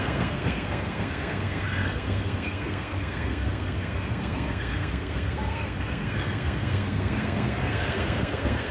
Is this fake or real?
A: fake